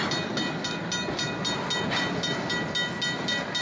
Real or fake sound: real